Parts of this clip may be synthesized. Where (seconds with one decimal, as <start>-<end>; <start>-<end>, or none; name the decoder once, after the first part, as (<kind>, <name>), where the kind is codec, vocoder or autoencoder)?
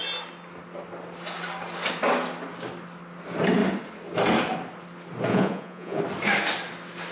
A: 5.3-6.0 (vocoder, Vocos)